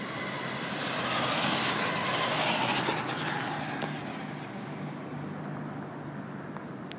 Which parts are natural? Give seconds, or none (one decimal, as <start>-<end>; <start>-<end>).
0.0-4.1; 4.8-7.0